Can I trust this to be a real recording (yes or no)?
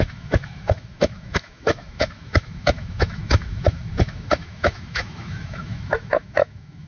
no